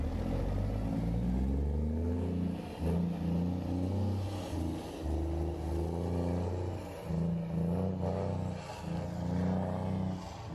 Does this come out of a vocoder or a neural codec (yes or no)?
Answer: no